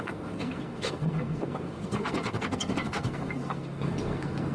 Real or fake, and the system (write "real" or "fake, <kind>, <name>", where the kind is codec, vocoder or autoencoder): fake, codec, SNAC